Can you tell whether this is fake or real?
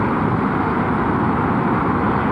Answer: real